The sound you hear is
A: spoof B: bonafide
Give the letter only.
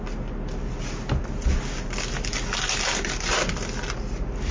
B